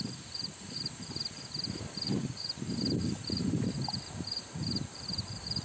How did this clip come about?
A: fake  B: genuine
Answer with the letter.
A